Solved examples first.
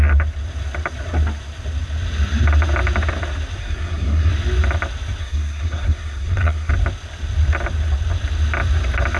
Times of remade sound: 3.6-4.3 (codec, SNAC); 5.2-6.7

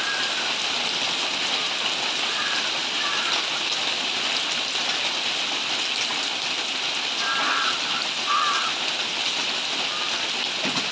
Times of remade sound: none

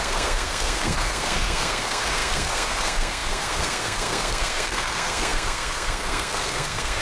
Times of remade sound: 0.0-7.0 (codec, SNAC)

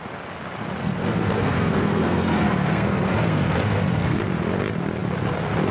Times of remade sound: 0.8-4.2 (codec, SNAC)